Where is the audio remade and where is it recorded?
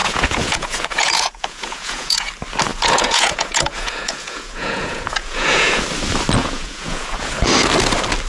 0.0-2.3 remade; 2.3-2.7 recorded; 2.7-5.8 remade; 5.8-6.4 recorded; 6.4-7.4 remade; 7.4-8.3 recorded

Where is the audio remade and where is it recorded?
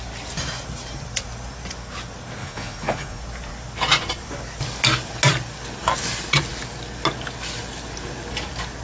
0.0-2.4 recorded; 2.4-3.2 remade; 3.2-8.8 recorded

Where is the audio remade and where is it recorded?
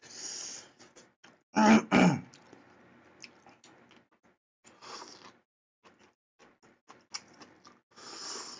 0.0-8.6 recorded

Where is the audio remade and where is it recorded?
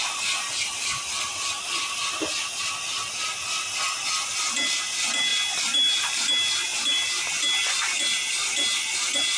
0.0-9.4 recorded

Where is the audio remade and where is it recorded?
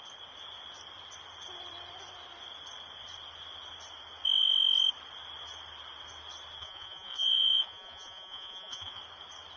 0.0-6.6 recorded; 6.6-9.0 remade; 9.0-9.6 recorded